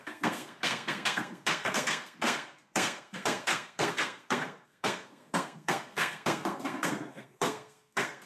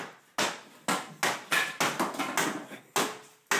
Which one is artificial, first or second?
first